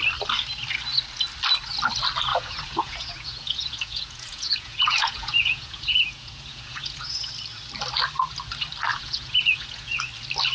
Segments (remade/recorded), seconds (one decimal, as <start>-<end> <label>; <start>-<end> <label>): 0.0-2.3 recorded; 2.3-7.3 remade; 7.3-8.9 recorded; 8.9-10.0 remade; 10.0-10.5 recorded